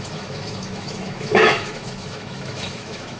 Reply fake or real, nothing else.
fake